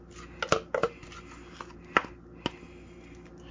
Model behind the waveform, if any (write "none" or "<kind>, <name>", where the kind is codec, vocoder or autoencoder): none